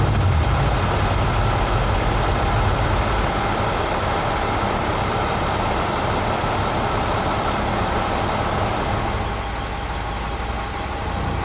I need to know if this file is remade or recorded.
recorded